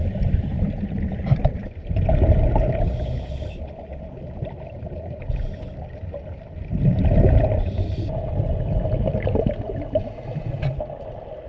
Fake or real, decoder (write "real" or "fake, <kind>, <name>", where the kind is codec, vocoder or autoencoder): real